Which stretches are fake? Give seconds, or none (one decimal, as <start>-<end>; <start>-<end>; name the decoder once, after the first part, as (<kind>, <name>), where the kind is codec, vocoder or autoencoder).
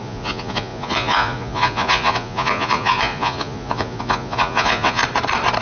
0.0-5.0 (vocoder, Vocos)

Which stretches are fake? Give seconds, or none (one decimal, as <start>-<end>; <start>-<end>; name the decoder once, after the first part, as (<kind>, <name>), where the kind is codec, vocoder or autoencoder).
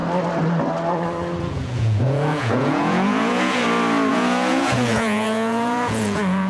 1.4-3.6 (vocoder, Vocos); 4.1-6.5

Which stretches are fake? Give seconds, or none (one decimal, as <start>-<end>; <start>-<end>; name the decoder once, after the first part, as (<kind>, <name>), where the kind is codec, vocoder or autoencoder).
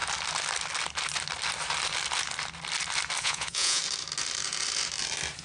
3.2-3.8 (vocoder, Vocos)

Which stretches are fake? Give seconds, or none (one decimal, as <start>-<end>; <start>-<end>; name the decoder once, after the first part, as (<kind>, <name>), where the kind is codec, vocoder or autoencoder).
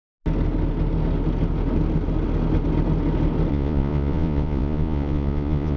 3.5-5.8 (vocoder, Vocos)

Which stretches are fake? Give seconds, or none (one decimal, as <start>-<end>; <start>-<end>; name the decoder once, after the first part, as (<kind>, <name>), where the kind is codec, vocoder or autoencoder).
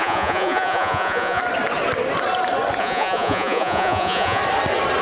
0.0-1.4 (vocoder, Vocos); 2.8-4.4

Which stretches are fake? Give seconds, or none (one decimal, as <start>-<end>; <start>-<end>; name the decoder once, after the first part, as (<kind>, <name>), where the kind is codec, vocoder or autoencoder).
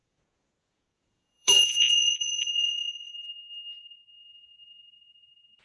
0.0-3.1 (vocoder, Vocos)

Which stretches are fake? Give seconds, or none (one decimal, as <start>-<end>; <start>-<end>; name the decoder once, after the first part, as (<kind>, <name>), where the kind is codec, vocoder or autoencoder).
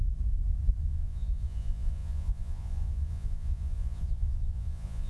0.8-5.1 (vocoder, Vocos)